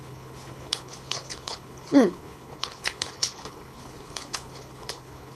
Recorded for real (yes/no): no